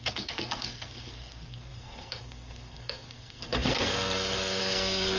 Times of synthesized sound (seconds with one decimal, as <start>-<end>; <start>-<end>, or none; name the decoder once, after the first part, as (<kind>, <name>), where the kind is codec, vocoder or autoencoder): 0.0-5.2 (codec, SNAC)